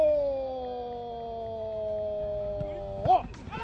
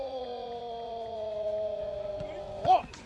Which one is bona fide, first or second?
first